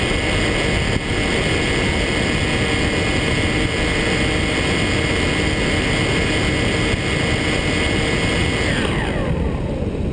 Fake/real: real